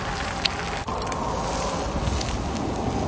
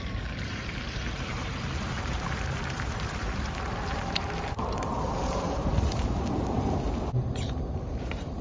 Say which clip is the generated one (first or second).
second